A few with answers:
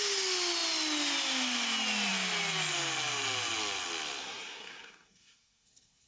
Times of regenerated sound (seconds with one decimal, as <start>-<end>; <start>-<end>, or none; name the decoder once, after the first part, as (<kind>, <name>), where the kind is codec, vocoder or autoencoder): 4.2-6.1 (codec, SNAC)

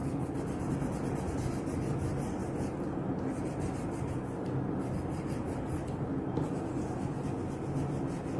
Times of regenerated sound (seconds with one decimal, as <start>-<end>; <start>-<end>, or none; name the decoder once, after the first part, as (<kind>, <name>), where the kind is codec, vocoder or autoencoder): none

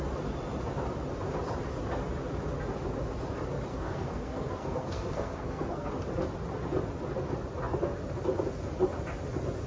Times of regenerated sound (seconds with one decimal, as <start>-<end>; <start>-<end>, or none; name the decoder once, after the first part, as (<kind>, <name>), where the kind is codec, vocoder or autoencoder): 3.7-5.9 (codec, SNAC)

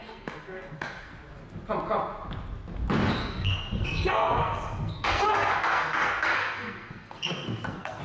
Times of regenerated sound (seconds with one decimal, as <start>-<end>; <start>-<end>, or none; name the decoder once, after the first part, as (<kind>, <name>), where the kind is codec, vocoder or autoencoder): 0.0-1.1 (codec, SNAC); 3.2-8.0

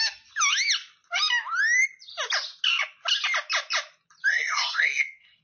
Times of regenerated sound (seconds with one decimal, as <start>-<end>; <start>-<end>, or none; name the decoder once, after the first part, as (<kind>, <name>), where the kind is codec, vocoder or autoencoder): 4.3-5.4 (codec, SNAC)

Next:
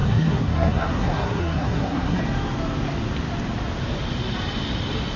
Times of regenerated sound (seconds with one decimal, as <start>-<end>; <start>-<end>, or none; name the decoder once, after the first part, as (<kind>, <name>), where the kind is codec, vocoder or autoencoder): 0.0-2.2 (codec, SNAC)

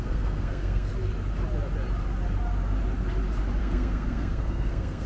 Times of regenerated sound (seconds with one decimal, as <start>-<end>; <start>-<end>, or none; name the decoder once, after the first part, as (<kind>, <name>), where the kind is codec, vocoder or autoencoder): 0.0-0.9 (codec, SNAC); 3.6-5.1